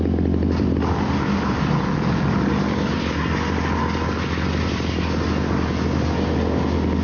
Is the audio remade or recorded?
recorded